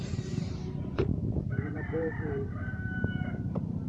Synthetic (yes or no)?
yes